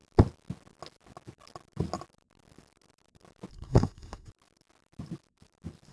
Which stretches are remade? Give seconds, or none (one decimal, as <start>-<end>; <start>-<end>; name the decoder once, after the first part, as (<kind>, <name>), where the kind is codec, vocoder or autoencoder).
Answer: 3.5-4.3 (codec, SNAC)